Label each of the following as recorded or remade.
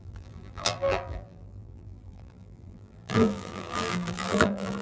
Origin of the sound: remade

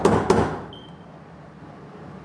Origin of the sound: recorded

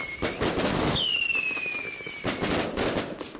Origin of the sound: recorded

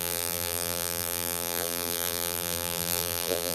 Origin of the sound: remade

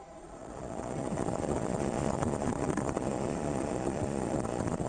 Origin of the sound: remade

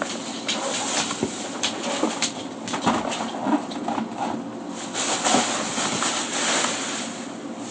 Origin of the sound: recorded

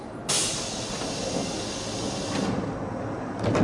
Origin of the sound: recorded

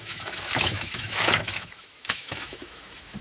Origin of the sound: remade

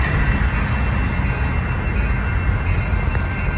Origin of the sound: recorded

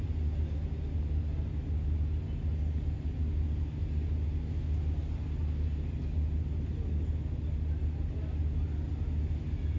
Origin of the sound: recorded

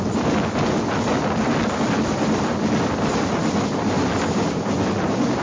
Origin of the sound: recorded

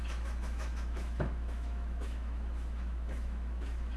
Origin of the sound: remade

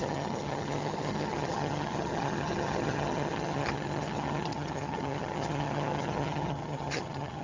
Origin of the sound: remade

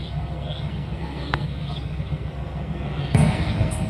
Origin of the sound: remade